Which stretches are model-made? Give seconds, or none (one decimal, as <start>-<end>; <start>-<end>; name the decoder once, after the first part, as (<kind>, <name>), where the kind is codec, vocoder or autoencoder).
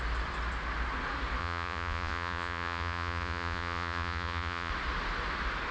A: 1.4-4.7 (vocoder, Vocos)